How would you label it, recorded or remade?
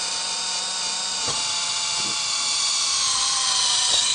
recorded